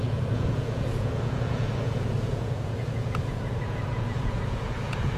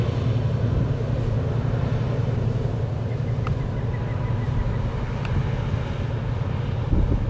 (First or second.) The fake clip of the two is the first